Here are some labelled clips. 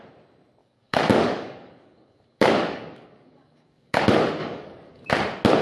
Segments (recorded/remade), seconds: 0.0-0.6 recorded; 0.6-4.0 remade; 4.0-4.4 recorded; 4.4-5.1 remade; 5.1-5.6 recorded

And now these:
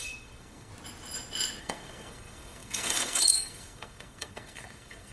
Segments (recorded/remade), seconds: 0.0-0.7 remade; 0.7-1.6 recorded; 1.6-5.1 remade